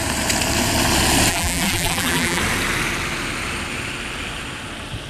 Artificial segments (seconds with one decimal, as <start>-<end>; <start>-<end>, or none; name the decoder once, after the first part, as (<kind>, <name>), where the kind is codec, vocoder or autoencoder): 1.3-2.4 (vocoder, BigVGAN v2)